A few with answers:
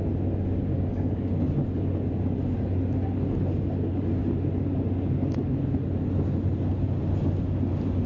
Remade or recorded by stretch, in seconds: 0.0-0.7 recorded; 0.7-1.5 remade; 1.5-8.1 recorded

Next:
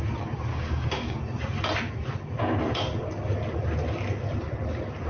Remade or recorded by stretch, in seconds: 0.0-0.5 recorded; 0.5-1.2 remade; 1.2-5.1 recorded

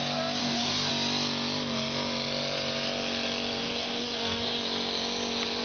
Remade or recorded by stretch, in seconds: 0.0-0.4 recorded; 0.4-0.9 remade; 0.9-3.6 recorded; 3.6-4.6 remade; 4.6-5.6 recorded

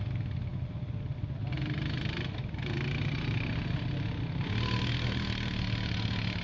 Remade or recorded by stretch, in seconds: 0.0-6.4 recorded

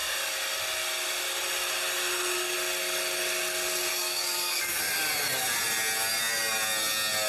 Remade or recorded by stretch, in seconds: 0.0-3.9 recorded; 3.9-4.8 remade; 4.8-7.3 recorded